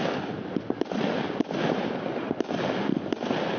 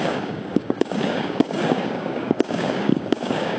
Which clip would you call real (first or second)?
first